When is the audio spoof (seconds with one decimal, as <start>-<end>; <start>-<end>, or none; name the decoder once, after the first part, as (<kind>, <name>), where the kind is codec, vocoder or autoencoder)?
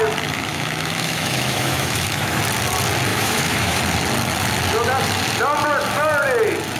0.5-2.4 (autoencoder, DAC-VAE); 3.1-3.8